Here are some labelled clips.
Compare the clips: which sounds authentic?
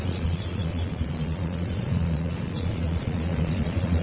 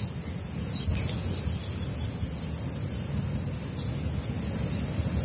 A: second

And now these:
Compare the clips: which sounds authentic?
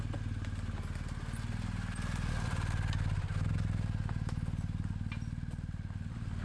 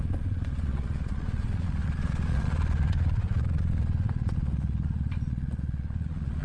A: first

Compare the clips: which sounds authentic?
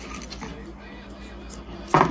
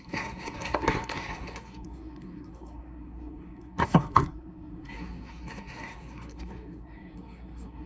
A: first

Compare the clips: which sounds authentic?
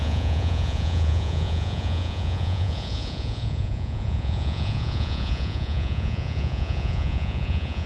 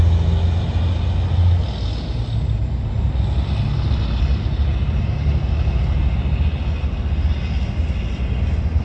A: second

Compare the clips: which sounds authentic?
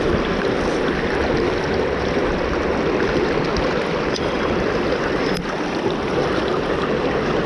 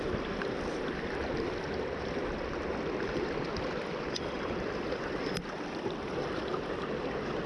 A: first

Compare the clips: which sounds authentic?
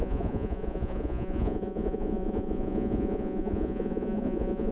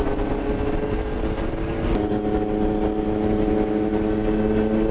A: second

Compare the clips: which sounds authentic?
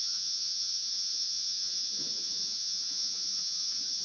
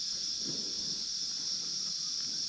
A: second